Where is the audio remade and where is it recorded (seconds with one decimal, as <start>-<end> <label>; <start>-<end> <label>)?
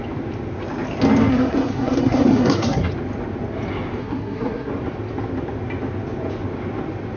0.0-1.3 recorded; 1.3-2.9 remade; 2.9-4.0 recorded; 4.0-4.7 remade; 4.7-7.2 recorded